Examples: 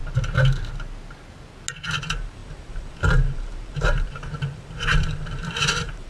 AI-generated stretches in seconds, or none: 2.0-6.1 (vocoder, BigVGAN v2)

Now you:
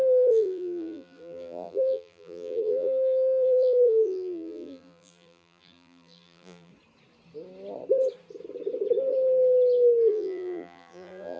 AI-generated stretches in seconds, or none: 0.0-6.7 (vocoder, BigVGAN v2); 10.1-11.4

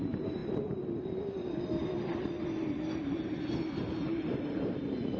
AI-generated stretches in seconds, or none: none

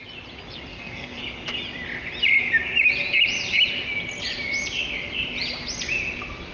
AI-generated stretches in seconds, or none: 0.7-1.2 (codec, SNAC)

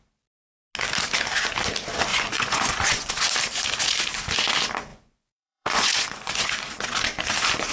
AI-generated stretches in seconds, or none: 2.1-3.1 (vocoder, Vocos); 4.9-6.5

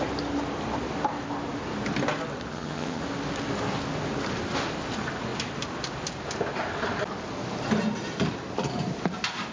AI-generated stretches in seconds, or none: 2.5-3.0 (vocoder, HiFi-GAN)